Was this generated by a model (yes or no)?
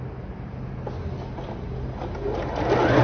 no